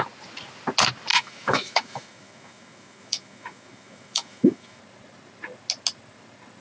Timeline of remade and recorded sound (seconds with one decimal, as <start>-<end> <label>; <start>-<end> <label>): 0.0-1.1 recorded; 1.1-4.8 remade; 4.8-6.6 recorded